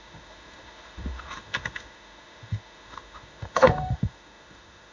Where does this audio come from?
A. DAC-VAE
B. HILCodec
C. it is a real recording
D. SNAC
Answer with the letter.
A